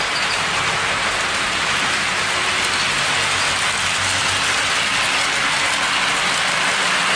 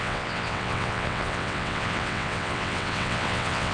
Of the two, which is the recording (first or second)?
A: first